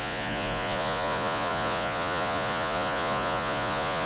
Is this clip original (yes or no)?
no